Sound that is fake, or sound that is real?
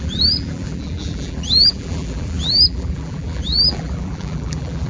fake